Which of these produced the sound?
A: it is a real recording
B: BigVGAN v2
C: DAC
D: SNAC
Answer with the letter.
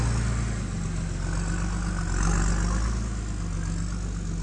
A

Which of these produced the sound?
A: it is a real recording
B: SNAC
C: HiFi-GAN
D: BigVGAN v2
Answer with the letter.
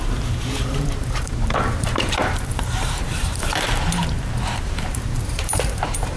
D